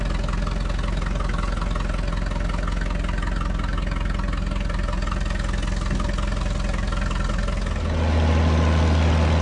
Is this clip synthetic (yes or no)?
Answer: no